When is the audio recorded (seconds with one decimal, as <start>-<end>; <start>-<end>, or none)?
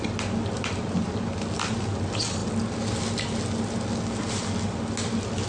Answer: 0.0-5.5